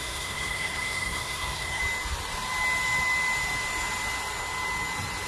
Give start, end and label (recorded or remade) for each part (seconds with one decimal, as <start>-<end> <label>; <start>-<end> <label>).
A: 0.0-1.8 remade; 1.8-5.3 recorded